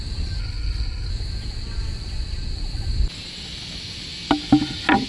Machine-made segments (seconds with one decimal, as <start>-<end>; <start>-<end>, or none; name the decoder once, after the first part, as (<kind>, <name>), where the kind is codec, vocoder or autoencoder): 0.4-1.1 (codec, HILCodec)